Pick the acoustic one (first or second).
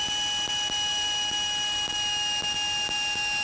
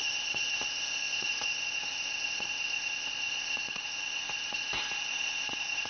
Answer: first